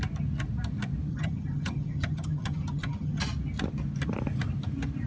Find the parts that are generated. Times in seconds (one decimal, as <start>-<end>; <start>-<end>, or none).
1.1-3.2